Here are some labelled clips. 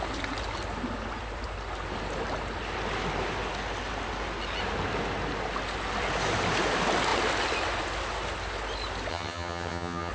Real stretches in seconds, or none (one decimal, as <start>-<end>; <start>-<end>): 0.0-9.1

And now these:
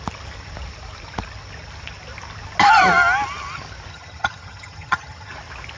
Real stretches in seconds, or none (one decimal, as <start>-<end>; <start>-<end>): 0.0-3.9; 5.3-5.8

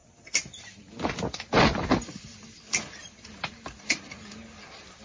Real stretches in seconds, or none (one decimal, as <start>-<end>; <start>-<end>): 0.0-5.0